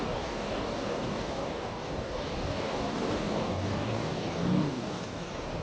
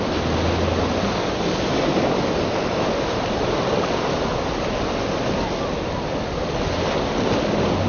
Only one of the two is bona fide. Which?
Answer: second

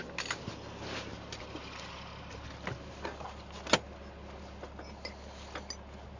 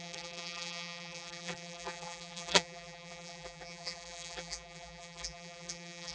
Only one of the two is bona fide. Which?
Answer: first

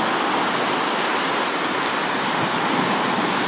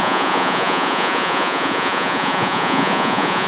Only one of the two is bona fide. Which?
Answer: first